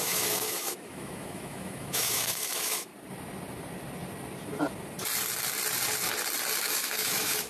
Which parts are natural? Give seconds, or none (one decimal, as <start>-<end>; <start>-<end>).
2.9-6.6